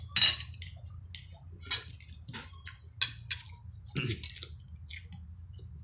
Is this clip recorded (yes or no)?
yes